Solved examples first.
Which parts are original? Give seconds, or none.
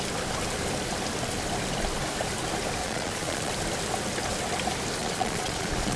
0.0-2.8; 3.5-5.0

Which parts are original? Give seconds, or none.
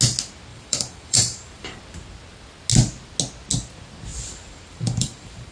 0.0-0.5; 1.8-4.1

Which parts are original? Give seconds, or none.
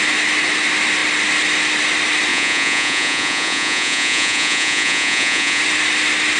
0.0-2.3; 5.6-6.4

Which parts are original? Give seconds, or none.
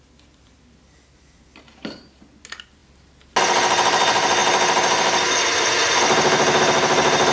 0.0-7.3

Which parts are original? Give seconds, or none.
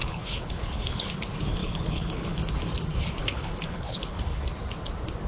1.1-1.6; 2.4-3.2; 4.5-5.3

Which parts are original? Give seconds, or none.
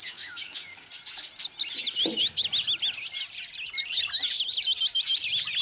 0.9-5.6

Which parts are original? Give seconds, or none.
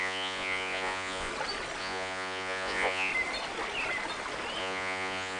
1.3-1.8; 3.1-4.6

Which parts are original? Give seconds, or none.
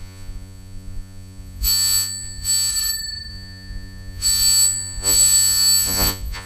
2.7-3.3